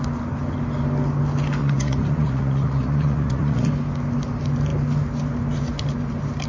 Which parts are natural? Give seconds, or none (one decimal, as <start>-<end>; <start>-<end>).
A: 0.0-1.6; 3.7-6.5

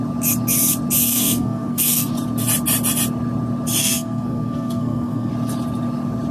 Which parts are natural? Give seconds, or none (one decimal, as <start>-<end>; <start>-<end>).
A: 0.0-1.0; 2.1-3.8; 5.3-6.3

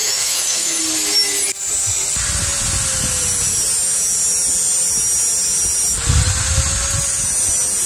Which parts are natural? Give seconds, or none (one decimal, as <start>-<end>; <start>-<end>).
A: 0.8-7.9

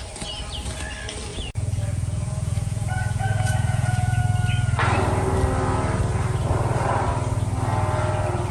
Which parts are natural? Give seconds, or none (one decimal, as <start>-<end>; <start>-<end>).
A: 0.0-1.3; 4.2-8.5

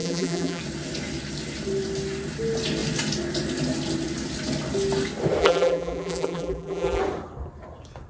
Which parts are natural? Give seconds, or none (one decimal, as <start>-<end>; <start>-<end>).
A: 0.6-5.4; 7.0-8.1

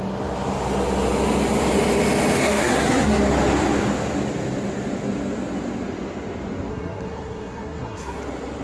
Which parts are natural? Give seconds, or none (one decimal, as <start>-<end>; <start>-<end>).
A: 0.0-2.4; 3.2-6.7; 8.2-8.6